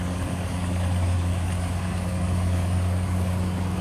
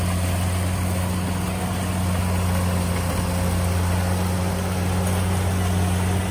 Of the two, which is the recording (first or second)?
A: second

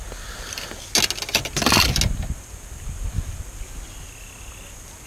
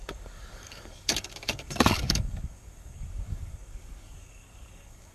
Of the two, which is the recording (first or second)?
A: first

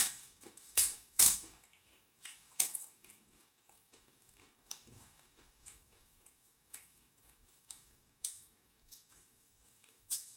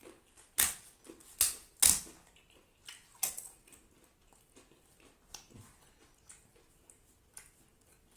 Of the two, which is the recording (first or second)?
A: second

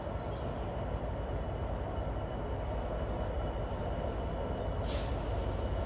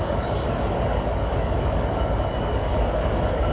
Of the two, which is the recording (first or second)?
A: first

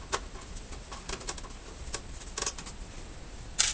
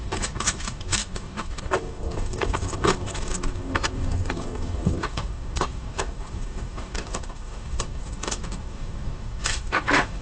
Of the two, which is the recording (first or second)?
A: first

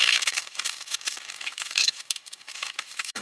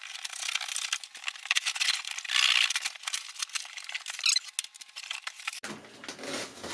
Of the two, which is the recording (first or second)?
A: second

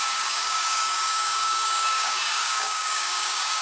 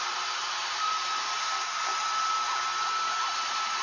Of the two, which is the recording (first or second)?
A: second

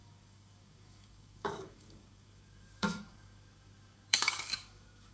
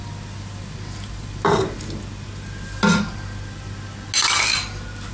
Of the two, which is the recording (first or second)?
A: second